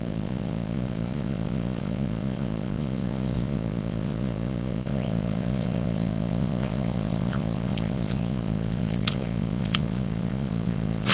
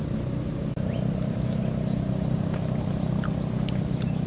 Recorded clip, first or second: second